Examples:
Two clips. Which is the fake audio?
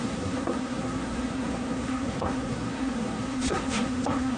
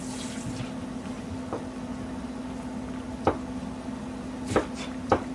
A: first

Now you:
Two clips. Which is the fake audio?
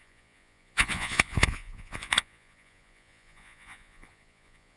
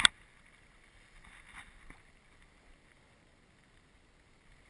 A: first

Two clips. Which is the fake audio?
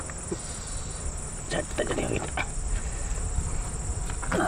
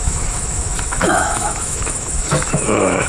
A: second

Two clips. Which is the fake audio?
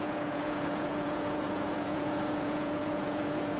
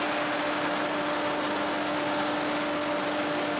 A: first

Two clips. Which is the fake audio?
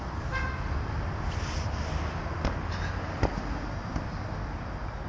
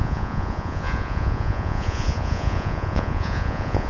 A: second